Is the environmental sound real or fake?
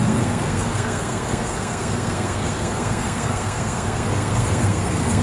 fake